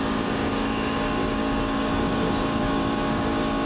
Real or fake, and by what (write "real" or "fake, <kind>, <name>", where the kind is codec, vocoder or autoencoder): fake, codec, DAC